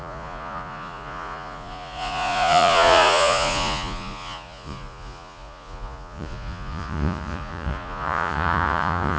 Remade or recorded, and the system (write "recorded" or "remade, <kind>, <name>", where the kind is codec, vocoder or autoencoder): remade, vocoder, Vocos